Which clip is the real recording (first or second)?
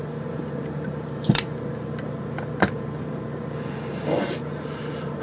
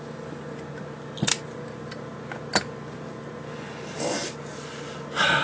second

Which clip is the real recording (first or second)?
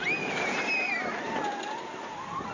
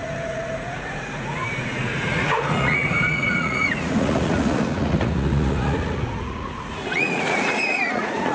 first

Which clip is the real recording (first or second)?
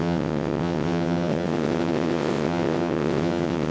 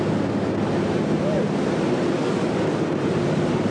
second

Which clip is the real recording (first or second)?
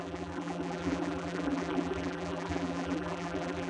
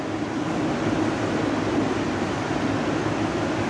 second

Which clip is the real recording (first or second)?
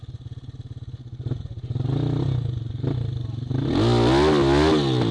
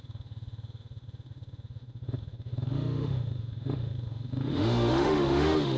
first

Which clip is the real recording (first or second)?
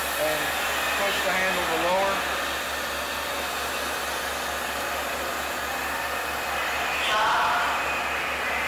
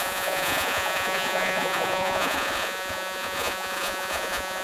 first